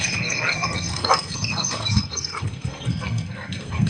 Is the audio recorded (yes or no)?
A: no